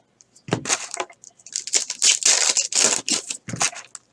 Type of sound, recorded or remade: recorded